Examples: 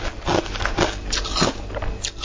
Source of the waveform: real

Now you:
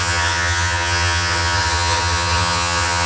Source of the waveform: fake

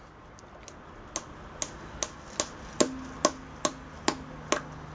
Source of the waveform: real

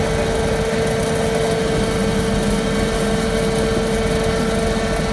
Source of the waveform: real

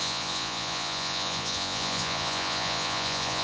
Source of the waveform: fake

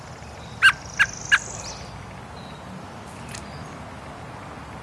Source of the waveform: real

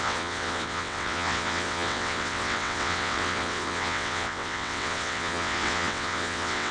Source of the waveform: fake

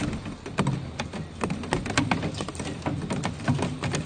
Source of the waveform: real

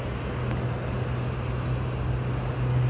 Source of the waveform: real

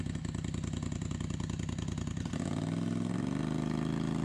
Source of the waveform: real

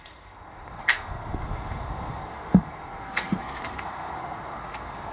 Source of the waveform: fake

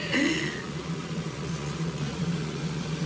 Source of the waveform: fake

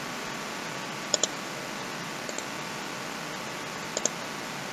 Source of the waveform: real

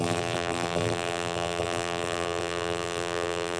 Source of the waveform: fake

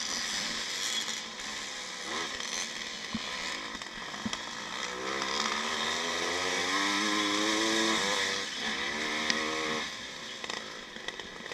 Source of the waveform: real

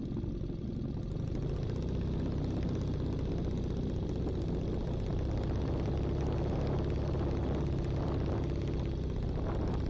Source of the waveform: real